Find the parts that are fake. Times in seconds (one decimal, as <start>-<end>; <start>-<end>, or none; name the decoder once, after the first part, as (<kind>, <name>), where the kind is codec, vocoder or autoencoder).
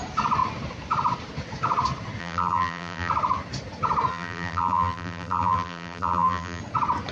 2.2-3.1 (vocoder, BigVGAN v2); 4.1-6.6